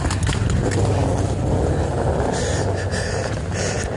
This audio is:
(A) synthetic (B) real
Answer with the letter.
B